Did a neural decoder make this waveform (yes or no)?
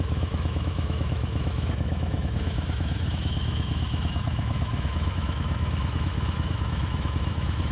yes